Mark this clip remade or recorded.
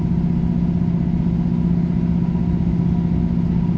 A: recorded